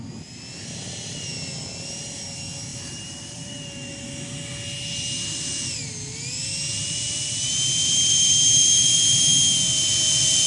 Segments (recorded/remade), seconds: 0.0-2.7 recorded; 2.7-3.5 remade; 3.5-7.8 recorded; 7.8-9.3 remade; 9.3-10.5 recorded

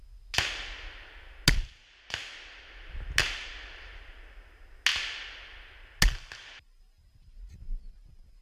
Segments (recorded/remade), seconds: 0.0-8.4 recorded

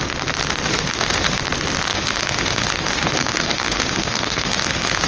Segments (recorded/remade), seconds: 0.0-0.7 recorded; 0.7-1.4 remade; 1.4-1.9 recorded; 1.9-5.1 remade